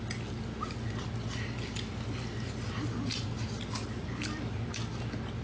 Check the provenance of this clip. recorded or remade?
recorded